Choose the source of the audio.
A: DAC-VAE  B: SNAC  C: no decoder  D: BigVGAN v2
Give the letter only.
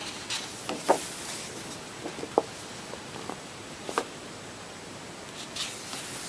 C